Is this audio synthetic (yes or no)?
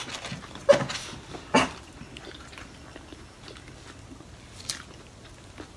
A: no